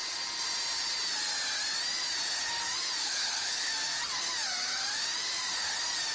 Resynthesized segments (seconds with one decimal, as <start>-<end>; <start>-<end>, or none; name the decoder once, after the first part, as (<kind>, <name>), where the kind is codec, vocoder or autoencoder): 3.0-3.7 (codec, HILCodec)